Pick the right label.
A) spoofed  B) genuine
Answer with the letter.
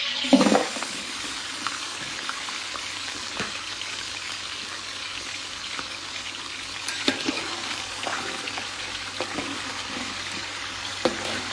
A